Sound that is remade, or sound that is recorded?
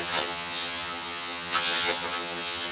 remade